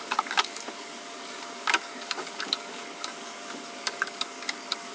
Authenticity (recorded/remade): remade